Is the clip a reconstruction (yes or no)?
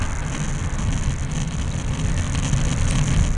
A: no